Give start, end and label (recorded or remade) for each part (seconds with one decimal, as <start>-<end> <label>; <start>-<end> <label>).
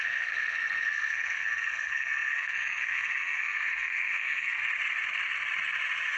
0.0-4.6 remade; 4.6-6.2 recorded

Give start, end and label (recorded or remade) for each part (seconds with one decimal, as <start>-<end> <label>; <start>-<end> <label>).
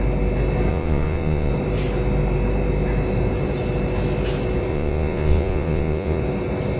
0.0-0.7 recorded; 0.7-1.5 remade; 1.5-4.7 recorded; 4.7-6.2 remade; 6.2-6.8 recorded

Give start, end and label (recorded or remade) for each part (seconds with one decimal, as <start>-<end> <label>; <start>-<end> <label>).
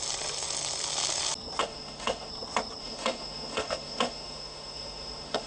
0.0-1.6 recorded; 1.6-2.3 remade; 2.3-2.8 recorded; 2.8-5.5 remade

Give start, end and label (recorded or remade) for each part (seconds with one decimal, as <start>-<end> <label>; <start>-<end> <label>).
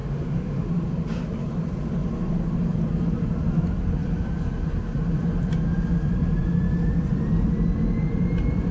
0.0-0.7 remade; 0.7-8.7 recorded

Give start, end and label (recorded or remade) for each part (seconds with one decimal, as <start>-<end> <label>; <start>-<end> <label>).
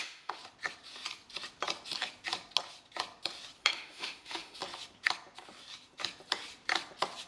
0.0-0.4 remade; 0.4-3.6 recorded; 3.6-4.6 remade; 4.6-7.3 recorded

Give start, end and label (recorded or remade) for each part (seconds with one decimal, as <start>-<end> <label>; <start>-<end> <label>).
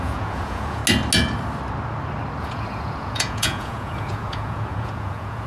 0.0-0.8 remade; 0.8-2.4 recorded; 2.4-5.5 remade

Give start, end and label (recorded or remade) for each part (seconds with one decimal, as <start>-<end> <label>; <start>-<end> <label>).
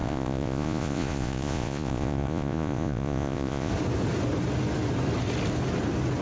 0.0-3.7 remade; 3.7-6.2 recorded